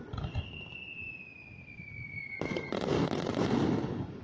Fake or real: real